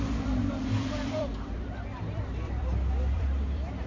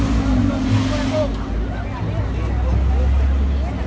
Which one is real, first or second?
second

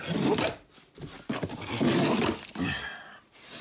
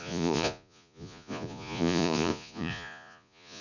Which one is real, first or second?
first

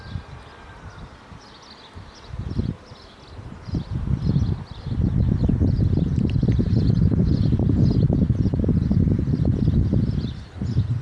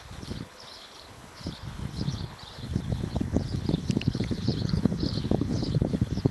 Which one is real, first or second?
first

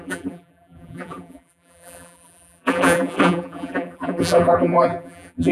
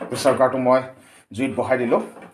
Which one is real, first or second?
second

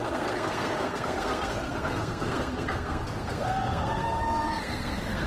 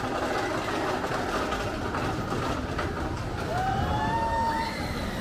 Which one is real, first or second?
second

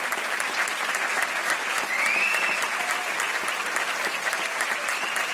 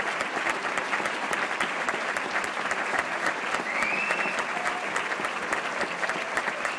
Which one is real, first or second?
first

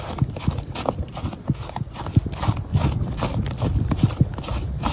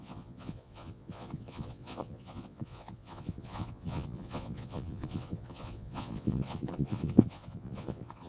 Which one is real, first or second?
first